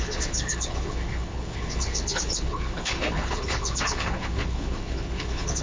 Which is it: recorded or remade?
remade